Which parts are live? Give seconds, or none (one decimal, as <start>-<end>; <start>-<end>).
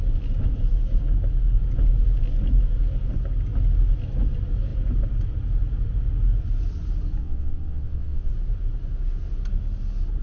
0.0-7.2; 8.3-10.2